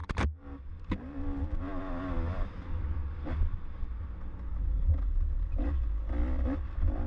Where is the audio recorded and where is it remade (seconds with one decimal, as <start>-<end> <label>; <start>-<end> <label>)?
0.0-0.9 remade; 0.9-4.7 recorded; 4.7-5.9 remade; 5.9-7.1 recorded